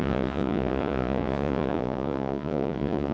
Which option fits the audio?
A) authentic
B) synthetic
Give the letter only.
B